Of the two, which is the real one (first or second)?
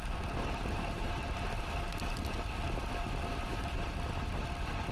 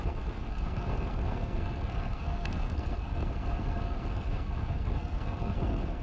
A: first